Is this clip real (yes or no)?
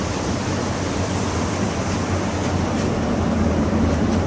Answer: yes